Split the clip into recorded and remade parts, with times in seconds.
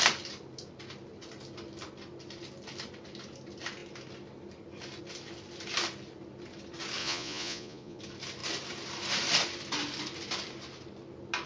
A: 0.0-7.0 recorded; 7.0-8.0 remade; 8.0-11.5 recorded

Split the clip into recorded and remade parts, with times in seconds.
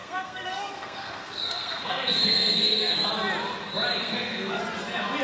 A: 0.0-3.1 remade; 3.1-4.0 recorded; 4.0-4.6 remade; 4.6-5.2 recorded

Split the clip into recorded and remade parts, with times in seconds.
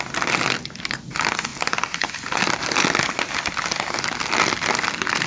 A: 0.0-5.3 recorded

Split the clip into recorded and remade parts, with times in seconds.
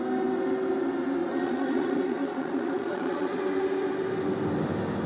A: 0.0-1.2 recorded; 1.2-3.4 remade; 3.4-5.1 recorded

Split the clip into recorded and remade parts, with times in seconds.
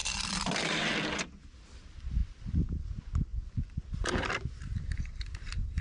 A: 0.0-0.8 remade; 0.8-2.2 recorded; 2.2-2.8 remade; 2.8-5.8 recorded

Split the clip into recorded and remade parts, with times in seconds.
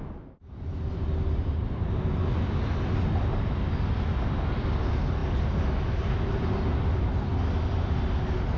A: 0.0-8.6 recorded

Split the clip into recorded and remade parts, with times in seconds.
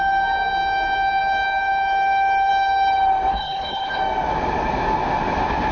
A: 0.0-3.3 recorded; 3.3-4.0 remade; 4.0-5.7 recorded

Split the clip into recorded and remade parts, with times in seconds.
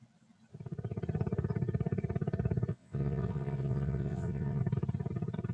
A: 0.0-2.7 recorded; 2.7-4.6 remade; 4.6-5.5 recorded